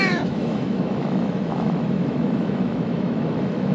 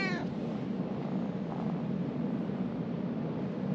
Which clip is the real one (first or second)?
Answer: second